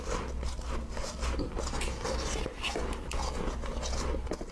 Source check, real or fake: real